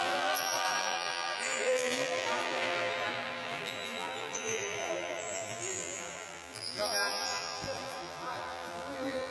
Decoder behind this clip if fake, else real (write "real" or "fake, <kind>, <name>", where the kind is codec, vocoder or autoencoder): fake, vocoder, BigVGAN v2